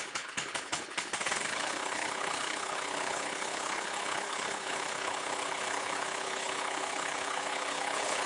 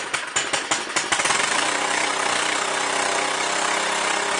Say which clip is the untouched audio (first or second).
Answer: second